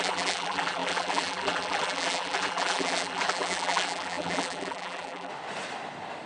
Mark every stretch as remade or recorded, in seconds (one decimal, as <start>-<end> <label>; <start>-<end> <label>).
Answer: 0.0-5.3 remade; 5.3-6.3 recorded

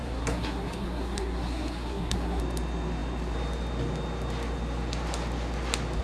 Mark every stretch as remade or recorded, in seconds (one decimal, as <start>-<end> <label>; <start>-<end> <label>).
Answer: 0.0-2.4 remade; 2.4-6.0 recorded

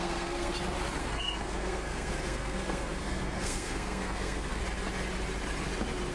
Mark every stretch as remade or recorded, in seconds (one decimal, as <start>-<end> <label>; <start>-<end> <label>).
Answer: 0.0-0.5 remade; 0.5-1.0 recorded; 1.0-4.6 remade; 4.6-6.1 recorded

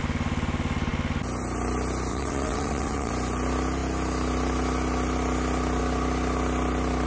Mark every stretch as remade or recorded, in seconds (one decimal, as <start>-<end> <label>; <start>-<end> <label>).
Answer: 0.0-2.1 recorded; 2.1-3.1 remade; 3.1-7.1 recorded